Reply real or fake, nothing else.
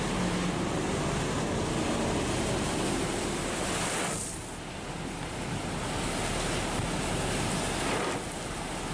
real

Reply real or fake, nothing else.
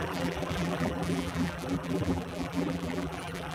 fake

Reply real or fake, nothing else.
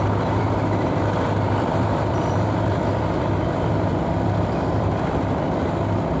fake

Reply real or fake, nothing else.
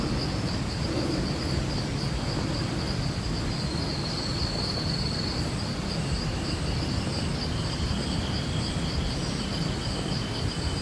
real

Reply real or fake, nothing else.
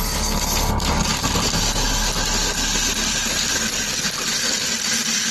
real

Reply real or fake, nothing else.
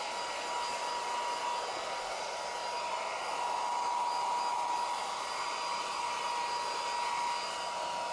real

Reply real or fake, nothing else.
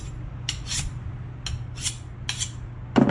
real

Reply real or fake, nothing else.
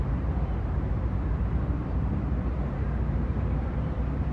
fake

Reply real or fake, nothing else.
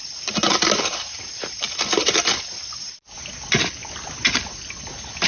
real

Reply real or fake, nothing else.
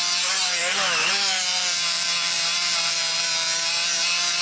fake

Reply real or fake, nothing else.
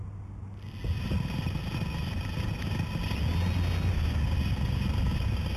real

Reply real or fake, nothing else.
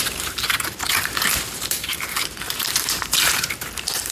fake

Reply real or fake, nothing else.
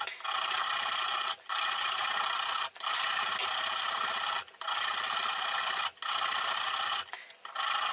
real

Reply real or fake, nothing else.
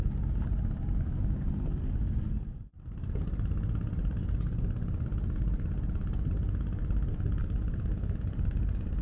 real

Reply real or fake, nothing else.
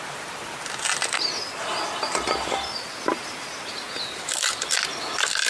real